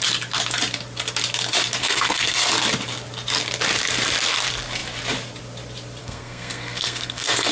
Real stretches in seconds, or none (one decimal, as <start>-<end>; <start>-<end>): 0.0-1.8; 2.5-6.0